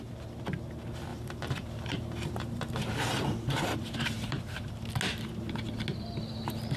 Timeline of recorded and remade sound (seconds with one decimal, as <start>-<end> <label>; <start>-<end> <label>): 0.0-1.1 recorded; 1.1-4.7 remade; 4.7-6.8 recorded